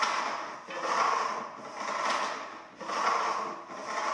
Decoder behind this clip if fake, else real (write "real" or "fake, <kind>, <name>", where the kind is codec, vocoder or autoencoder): real